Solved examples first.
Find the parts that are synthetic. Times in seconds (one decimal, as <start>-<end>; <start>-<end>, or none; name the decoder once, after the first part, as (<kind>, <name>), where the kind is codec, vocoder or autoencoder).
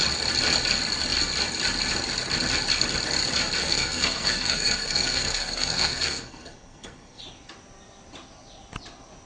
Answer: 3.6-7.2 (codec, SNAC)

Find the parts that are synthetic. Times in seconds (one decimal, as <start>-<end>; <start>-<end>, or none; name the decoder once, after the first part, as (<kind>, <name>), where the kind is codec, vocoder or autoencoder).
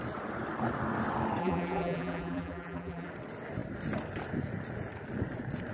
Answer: 1.4-3.1 (vocoder, BigVGAN v2)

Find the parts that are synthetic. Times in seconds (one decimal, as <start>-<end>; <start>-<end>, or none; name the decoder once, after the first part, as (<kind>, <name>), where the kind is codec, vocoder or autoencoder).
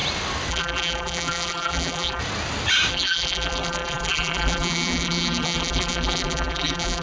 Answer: 0.5-2.2 (vocoder, BigVGAN v2); 2.9-7.0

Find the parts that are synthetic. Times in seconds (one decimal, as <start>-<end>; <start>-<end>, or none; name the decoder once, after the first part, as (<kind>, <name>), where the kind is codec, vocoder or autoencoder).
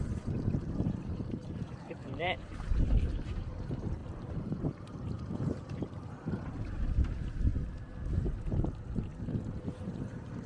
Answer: 0.0-7.5 (vocoder, BigVGAN v2); 9.2-10.5